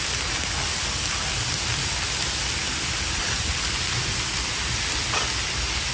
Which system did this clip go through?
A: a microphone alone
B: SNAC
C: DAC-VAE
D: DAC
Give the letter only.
A